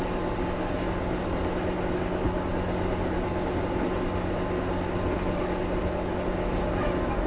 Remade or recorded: recorded